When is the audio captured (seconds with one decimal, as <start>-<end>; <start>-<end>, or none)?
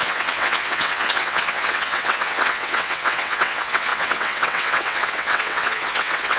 none